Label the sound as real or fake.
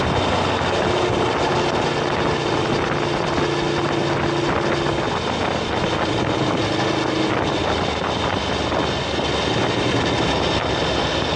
real